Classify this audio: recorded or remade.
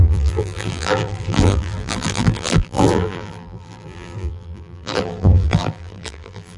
remade